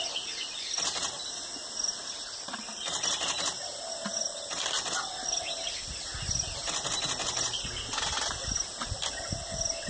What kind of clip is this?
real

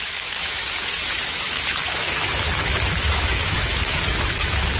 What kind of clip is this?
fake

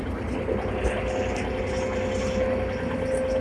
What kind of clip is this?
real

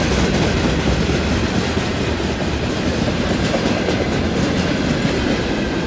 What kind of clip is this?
real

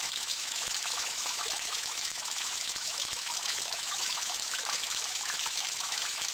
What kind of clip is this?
fake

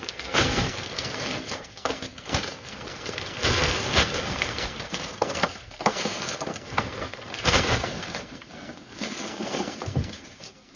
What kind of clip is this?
fake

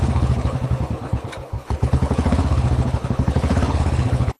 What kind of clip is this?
fake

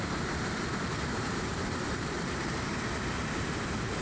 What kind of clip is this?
fake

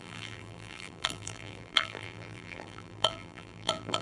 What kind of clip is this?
fake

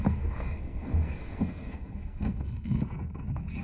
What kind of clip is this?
fake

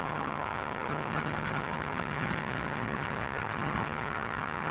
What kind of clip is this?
fake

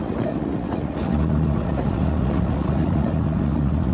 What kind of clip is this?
fake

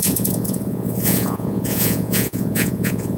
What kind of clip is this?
fake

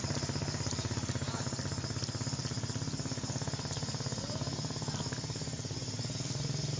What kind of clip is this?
real